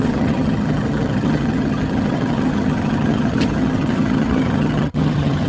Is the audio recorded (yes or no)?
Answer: no